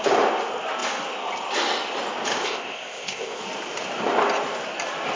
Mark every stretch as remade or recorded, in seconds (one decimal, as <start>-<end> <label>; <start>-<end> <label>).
0.0-2.4 recorded; 2.4-3.4 remade; 3.4-5.2 recorded